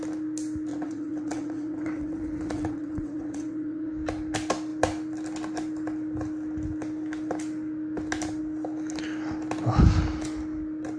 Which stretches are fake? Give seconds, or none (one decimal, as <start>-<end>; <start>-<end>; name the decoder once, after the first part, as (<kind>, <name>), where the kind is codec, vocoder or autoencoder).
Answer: 0.7-3.9 (vocoder, WaveNeXt)